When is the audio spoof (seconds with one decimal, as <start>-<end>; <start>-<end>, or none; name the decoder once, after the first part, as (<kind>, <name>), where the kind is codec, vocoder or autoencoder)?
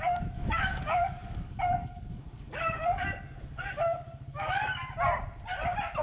0.0-4.8 (codec, DAC)